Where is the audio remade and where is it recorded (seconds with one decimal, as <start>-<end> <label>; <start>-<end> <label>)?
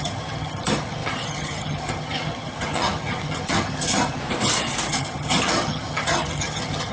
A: 0.0-4.2 remade; 4.2-4.9 recorded; 4.9-6.9 remade